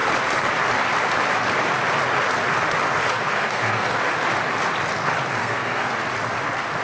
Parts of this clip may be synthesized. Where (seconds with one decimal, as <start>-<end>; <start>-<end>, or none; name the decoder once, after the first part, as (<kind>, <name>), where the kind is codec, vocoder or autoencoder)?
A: 3.1-4.0 (codec, SNAC); 5.4-5.9